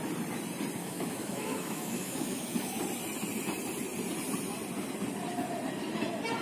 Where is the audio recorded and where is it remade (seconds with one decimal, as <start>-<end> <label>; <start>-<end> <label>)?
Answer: 0.0-0.8 recorded; 0.8-2.7 remade; 2.7-6.4 recorded